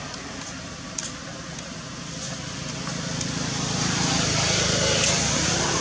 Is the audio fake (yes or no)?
no